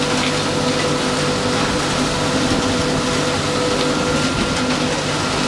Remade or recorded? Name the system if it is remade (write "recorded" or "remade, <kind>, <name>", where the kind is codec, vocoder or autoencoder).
recorded